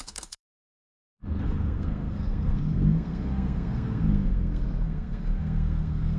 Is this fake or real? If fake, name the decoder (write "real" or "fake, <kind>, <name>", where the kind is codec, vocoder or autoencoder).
fake, codec, SNAC